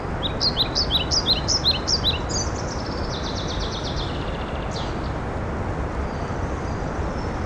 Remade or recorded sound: recorded